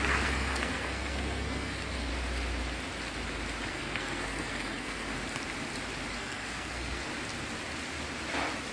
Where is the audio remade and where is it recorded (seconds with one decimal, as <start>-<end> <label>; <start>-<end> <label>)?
0.0-2.1 remade; 2.1-3.7 recorded; 3.7-5.1 remade; 5.1-6.1 recorded; 6.1-7.1 remade; 7.1-8.7 recorded